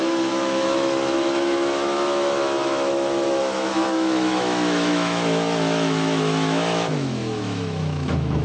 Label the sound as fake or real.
fake